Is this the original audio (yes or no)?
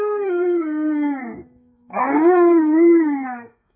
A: no